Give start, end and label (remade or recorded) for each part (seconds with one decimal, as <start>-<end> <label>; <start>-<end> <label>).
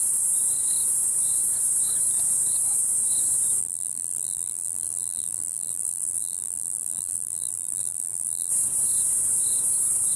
0.0-3.6 recorded; 3.6-8.5 remade; 8.5-10.2 recorded